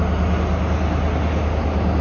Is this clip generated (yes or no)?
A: no